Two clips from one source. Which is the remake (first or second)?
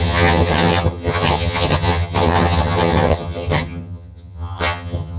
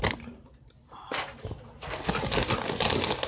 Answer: first